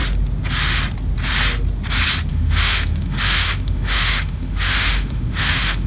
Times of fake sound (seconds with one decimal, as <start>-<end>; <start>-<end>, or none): 2.3-5.9